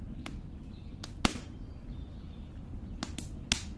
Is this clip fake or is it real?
real